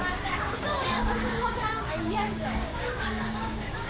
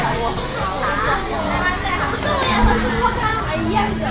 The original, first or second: second